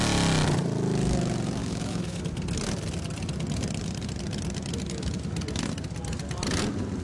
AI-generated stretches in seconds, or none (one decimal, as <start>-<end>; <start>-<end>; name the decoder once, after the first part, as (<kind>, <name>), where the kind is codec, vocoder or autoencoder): 1.6-2.2 (autoencoder, DAC-VAE)